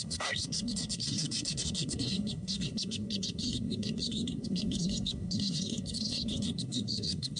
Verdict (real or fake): fake